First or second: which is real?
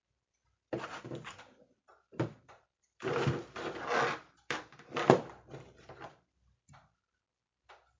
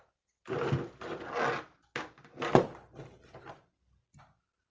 second